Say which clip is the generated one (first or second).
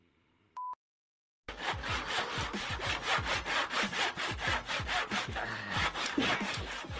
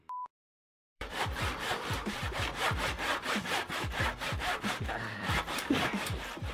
second